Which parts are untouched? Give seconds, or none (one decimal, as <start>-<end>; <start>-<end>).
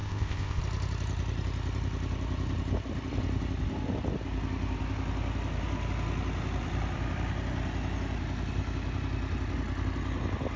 0.6-10.6